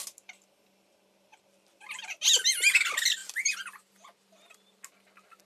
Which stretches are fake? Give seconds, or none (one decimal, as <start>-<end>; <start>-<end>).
1.3-2.2; 3.2-3.9